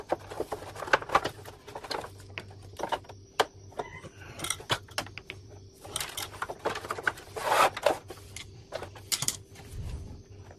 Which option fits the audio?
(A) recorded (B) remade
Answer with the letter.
A